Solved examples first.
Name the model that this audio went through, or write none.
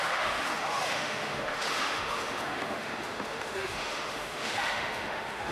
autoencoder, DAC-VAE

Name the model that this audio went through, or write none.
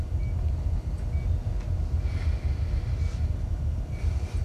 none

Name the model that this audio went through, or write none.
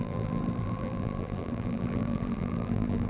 vocoder, BigVGAN v2